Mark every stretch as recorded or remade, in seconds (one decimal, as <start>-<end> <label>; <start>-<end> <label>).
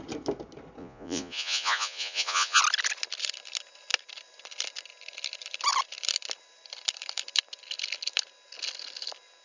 0.0-0.8 recorded; 0.8-2.6 remade; 2.6-9.4 recorded